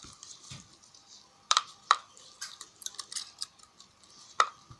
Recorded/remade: remade